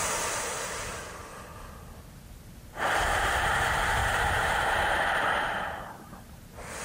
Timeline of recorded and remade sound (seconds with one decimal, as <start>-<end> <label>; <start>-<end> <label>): 0.0-4.0 recorded; 4.0-5.8 remade; 5.8-6.8 recorded